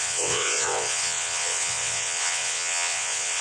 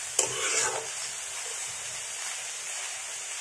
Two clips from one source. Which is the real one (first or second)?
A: second